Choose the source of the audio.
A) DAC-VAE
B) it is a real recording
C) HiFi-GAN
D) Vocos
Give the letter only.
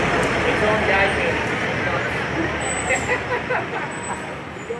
B